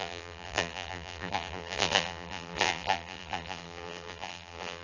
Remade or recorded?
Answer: remade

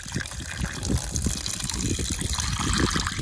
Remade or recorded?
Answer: recorded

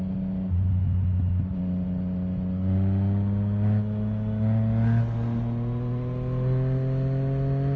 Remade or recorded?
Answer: recorded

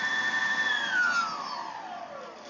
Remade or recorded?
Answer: remade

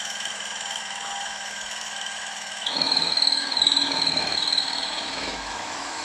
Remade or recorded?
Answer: remade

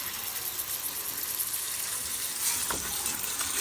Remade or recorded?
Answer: recorded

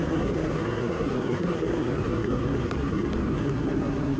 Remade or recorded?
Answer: remade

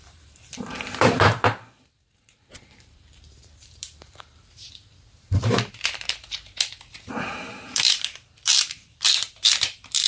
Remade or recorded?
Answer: remade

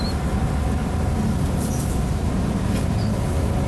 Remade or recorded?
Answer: recorded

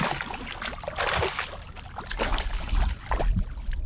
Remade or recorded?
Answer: recorded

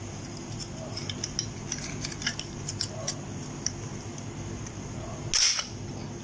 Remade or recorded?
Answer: recorded